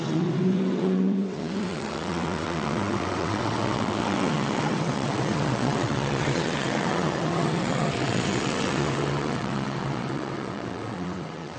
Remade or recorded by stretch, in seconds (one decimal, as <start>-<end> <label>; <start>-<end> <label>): 0.0-11.6 remade